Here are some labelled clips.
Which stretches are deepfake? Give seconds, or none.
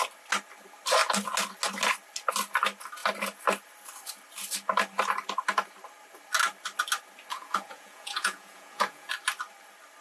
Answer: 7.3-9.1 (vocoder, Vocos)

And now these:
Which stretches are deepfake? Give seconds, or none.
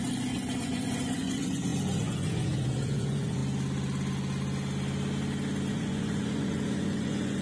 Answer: 0.6-3.4 (vocoder, Vocos); 5.7-7.4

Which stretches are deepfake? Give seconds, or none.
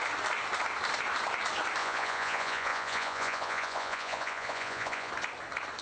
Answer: 1.8-5.1 (vocoder, Vocos)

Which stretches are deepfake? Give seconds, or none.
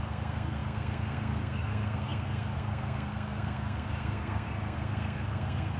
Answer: 0.0-5.8 (codec, SNAC)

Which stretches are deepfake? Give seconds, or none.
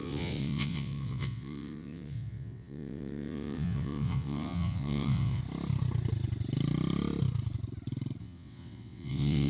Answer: 0.0-5.4 (vocoder, WaveNeXt); 8.2-9.5